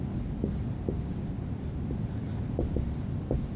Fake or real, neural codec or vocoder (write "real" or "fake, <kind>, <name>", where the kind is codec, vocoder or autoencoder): real